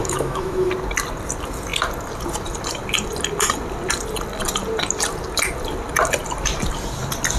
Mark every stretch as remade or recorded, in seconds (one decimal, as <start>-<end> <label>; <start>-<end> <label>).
0.0-0.7 remade; 0.7-7.4 recorded